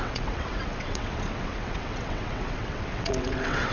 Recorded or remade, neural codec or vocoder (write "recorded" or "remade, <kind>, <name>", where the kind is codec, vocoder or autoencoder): remade, vocoder, WaveNeXt